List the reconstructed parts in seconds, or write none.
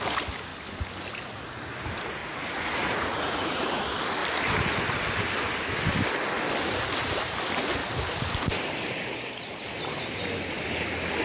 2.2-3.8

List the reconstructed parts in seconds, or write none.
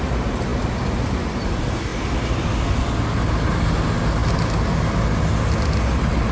none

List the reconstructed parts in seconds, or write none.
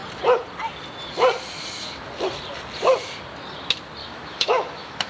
4.0-5.1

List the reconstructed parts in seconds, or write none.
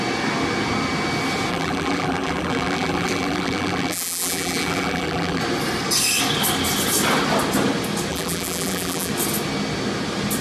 1.5-5.4; 8.1-9.1